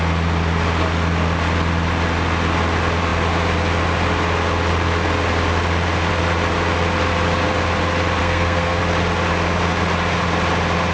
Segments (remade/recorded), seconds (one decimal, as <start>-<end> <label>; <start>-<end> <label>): 0.0-8.2 recorded; 8.2-8.8 remade; 8.8-10.9 recorded